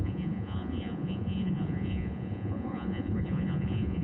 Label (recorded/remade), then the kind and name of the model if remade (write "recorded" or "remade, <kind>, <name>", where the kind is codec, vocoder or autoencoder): remade, vocoder, Vocos